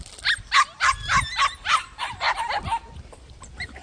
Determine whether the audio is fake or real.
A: real